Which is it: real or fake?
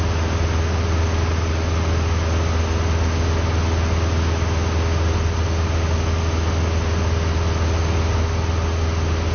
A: real